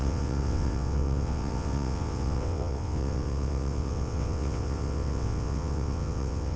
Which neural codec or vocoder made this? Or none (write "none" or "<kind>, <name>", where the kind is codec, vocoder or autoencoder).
vocoder, WaveNeXt